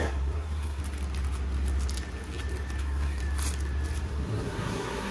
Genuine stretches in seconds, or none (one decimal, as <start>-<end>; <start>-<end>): 0.8-2.8; 3.2-4.1